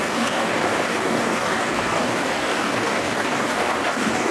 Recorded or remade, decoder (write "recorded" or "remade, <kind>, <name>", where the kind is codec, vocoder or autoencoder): remade, codec, DAC